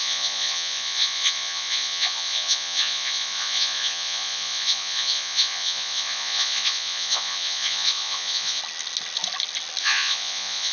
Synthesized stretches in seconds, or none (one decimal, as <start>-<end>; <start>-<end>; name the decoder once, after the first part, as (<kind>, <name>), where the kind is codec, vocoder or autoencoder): 0.0-8.6 (vocoder, Vocos); 9.8-10.7